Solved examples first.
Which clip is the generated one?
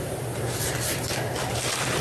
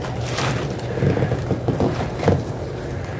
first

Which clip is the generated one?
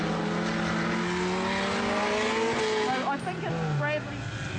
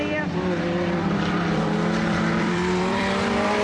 second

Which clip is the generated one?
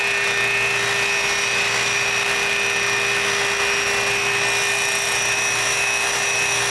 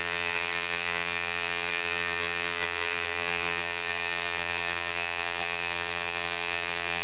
second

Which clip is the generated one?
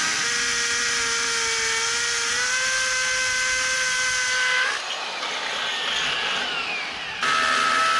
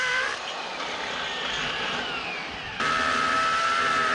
second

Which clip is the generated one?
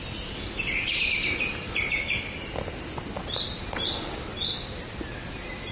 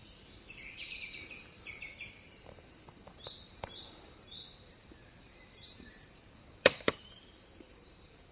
second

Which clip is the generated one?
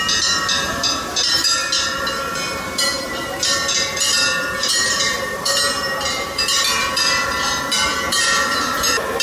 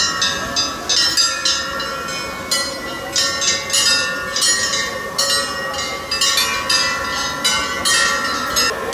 first